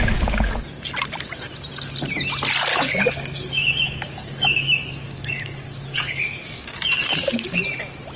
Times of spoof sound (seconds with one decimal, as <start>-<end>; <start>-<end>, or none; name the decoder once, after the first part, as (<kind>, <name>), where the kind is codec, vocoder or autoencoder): 2.7-7.6 (codec, DAC)